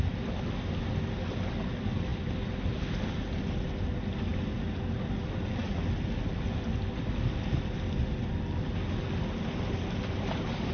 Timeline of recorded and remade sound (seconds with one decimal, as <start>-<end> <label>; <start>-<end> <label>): 0.0-10.7 recorded